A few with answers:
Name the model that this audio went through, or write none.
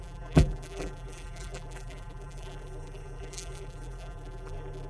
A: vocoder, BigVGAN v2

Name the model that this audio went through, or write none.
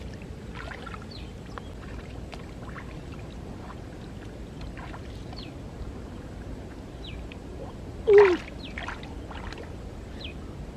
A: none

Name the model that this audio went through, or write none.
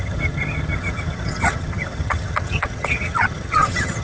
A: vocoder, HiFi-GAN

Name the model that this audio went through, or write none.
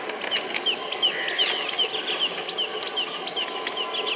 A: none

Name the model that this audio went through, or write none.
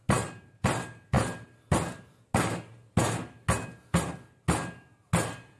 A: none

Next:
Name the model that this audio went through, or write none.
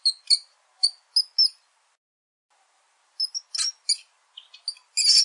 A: none